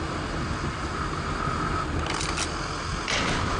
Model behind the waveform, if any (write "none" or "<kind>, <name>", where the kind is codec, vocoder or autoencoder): none